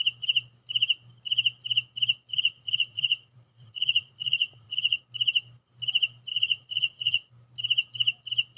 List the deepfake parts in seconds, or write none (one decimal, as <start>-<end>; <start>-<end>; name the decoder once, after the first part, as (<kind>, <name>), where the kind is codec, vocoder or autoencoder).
2.3-5.0 (vocoder, Vocos); 6.3-7.3